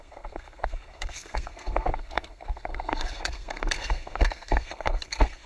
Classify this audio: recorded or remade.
remade